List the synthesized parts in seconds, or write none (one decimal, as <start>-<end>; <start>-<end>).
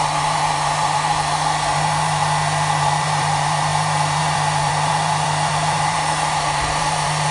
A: 0.0-2.2; 2.8-7.3